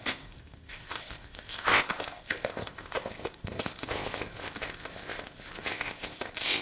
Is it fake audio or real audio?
fake